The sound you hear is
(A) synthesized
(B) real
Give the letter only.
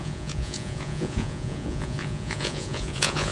A